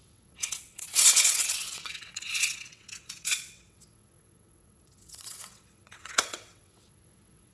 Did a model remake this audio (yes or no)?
yes